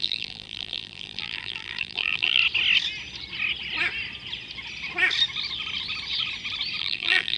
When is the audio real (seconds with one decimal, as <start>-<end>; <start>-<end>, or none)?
2.4-6.8